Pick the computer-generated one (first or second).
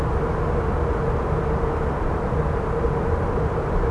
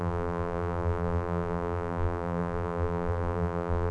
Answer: second